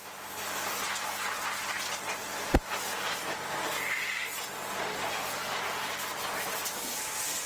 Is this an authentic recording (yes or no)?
yes